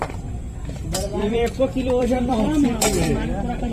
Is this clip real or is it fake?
fake